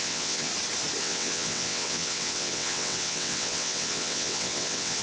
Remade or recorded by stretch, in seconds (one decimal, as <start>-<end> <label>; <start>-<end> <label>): 0.0-0.5 remade; 0.5-1.0 recorded; 1.0-5.0 remade